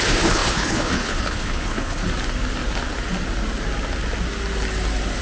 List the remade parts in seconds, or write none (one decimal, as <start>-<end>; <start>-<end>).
0.0-2.0